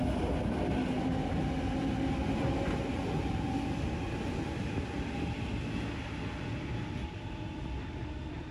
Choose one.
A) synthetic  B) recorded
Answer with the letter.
B